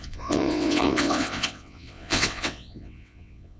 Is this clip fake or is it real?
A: fake